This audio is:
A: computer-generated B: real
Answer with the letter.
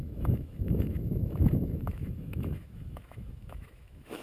A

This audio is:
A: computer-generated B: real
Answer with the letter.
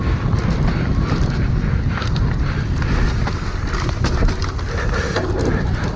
B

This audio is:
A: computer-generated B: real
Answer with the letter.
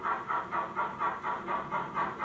B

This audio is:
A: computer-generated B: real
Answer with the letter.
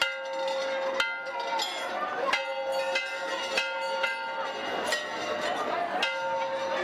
B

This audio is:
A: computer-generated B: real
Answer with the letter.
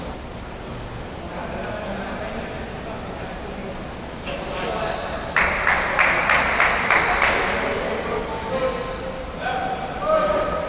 B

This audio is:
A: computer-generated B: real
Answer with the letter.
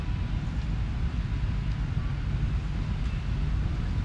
B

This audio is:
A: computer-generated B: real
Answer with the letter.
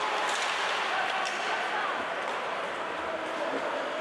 B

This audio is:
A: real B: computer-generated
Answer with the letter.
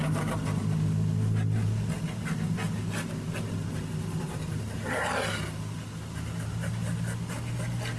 A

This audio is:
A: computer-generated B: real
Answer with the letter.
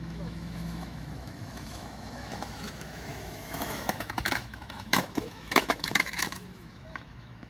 A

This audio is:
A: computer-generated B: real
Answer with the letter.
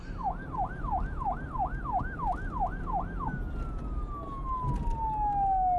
B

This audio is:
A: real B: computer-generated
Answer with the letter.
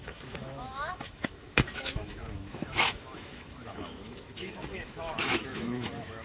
B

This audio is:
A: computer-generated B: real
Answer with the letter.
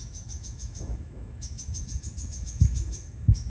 A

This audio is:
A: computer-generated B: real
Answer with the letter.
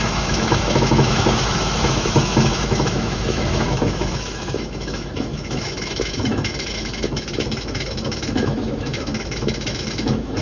A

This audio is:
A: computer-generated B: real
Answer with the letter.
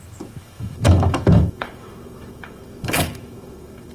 A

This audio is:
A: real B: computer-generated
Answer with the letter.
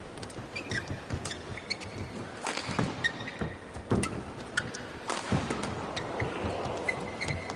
A